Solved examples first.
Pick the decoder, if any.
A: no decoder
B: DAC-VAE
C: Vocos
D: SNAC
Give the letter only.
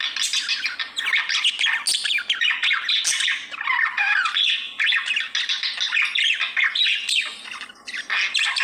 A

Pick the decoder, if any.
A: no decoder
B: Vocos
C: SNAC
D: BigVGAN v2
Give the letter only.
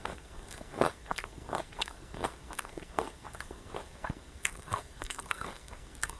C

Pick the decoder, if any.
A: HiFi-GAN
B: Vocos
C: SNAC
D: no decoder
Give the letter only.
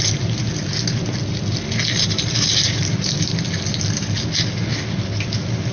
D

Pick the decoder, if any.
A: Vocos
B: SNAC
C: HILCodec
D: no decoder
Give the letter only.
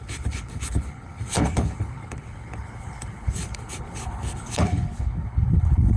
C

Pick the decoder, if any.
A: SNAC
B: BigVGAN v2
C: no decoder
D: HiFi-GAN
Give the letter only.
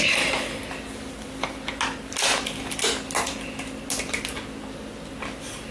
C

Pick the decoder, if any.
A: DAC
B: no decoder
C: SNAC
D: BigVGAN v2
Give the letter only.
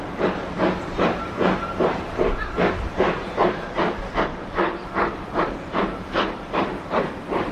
D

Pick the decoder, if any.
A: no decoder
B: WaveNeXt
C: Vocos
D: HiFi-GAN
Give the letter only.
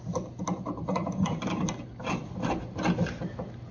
A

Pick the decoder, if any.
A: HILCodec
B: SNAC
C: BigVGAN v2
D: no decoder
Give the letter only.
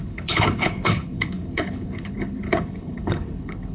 A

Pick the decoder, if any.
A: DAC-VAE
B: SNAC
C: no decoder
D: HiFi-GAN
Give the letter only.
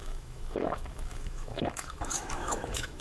A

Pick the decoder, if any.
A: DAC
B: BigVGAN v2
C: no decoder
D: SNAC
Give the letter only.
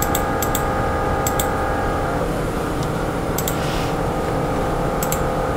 B